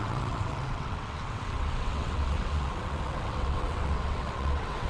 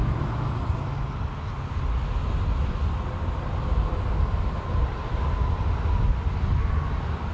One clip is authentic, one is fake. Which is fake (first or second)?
first